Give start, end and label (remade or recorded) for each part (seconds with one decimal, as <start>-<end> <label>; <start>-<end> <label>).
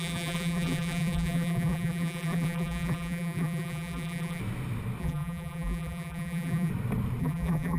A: 0.0-4.4 remade; 4.4-5.0 recorded; 5.0-6.7 remade; 6.7-7.2 recorded; 7.2-7.8 remade